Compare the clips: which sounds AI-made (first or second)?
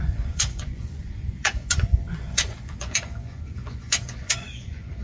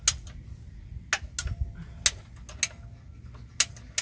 first